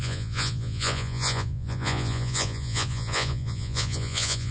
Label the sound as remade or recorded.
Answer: remade